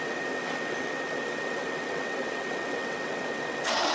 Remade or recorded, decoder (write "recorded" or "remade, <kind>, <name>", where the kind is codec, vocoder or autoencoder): remade, vocoder, WaveNeXt